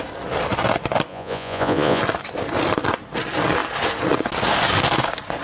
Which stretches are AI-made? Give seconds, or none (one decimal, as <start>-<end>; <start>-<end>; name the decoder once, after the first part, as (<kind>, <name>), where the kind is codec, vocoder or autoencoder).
1.1-2.0 (vocoder, Vocos)